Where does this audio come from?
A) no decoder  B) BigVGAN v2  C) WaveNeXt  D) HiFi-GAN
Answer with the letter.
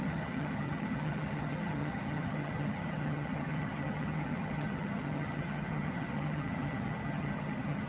D